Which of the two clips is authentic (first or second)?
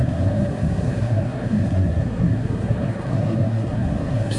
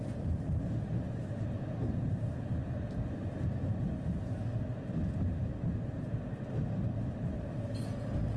second